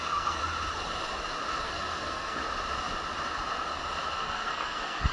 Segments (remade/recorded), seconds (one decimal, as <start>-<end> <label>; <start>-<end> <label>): 0.0-0.4 remade; 0.4-1.6 recorded; 1.6-2.4 remade; 2.4-4.1 recorded; 4.1-5.1 remade